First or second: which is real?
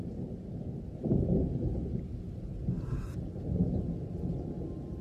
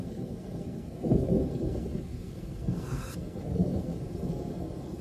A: first